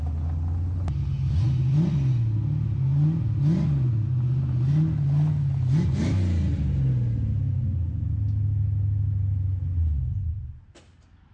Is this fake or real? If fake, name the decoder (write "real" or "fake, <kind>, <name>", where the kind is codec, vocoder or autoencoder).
real